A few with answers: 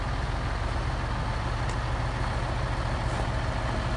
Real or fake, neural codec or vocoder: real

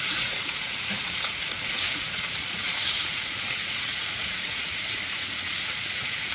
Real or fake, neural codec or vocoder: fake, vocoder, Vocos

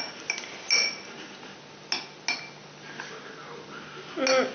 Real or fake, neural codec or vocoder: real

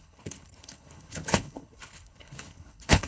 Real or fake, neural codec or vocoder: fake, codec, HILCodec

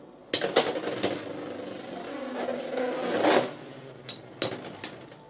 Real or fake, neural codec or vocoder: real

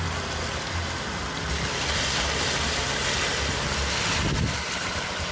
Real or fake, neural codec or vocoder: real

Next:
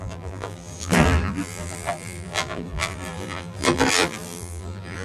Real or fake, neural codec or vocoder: fake, vocoder, BigVGAN v2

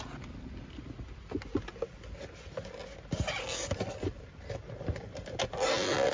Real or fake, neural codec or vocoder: real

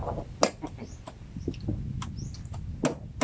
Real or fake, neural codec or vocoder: real